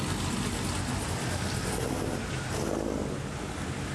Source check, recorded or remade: recorded